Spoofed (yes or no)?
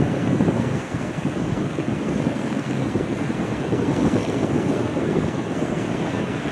yes